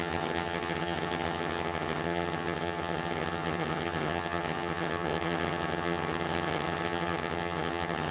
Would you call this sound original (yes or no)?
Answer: no